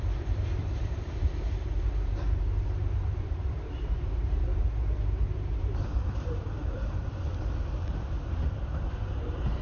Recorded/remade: remade